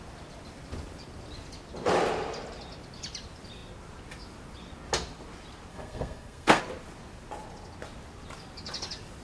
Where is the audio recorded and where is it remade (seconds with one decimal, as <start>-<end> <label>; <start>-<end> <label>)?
0.0-5.7 recorded; 5.7-6.6 remade; 6.6-9.2 recorded